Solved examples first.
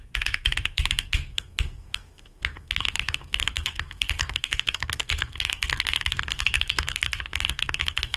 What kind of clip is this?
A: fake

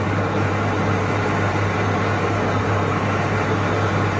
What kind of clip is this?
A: real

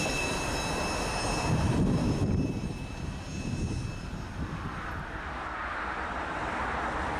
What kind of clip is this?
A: fake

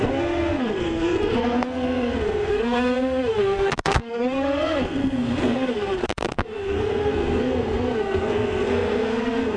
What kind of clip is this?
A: fake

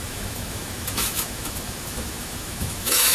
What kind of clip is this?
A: fake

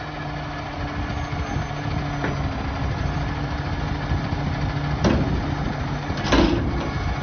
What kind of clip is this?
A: real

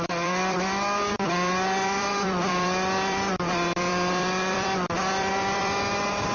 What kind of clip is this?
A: fake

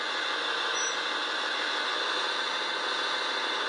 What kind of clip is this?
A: real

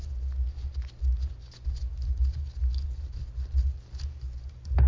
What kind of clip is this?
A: real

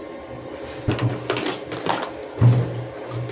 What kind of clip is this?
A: real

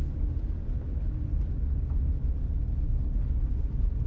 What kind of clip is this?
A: real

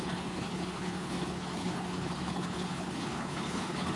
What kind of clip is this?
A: fake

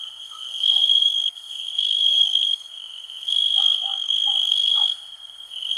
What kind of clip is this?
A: fake